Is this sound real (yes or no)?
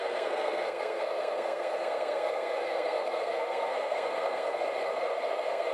no